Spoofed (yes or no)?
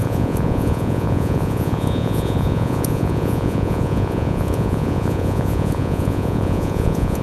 yes